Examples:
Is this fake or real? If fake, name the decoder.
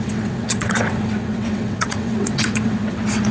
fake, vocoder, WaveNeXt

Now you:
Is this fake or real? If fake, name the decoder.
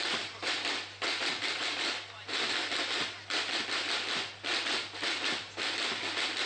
real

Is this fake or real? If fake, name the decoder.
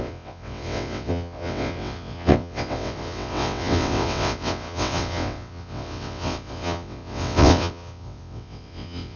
fake, vocoder, WaveNeXt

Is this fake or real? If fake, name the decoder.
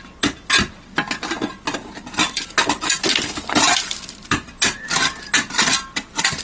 real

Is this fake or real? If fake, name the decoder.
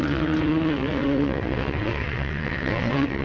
fake, vocoder, WaveNeXt